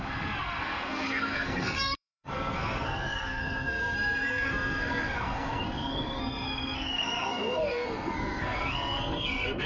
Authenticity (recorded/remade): remade